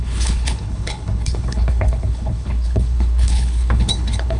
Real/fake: fake